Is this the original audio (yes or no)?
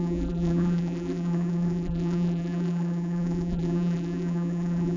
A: no